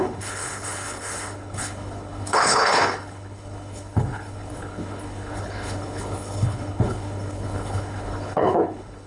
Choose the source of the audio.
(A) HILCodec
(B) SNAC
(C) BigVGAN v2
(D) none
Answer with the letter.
A